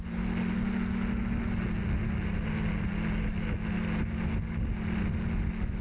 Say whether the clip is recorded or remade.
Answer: recorded